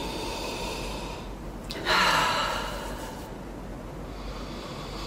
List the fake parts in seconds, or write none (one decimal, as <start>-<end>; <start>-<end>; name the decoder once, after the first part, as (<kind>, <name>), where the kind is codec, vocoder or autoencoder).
0.0-1.2 (vocoder, BigVGAN v2)